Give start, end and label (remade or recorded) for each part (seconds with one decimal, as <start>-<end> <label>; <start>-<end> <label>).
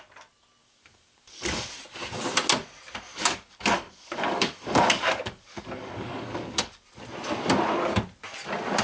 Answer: 0.0-0.6 recorded; 0.6-1.7 remade; 1.7-3.1 recorded; 3.1-6.8 remade; 6.8-8.8 recorded